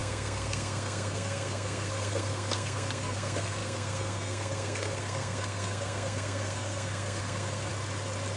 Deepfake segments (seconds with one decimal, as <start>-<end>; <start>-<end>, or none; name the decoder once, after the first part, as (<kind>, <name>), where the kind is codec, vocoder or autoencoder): 0.0-7.7 (codec, SNAC)